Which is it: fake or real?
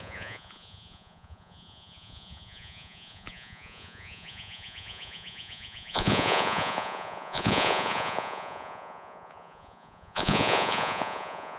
fake